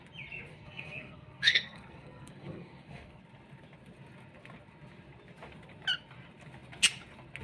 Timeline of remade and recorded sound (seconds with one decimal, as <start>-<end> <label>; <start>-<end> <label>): 0.0-0.5 recorded; 0.5-3.2 remade; 3.2-7.4 recorded